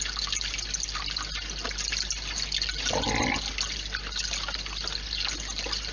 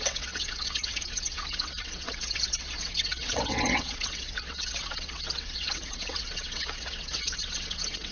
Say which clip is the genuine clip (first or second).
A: first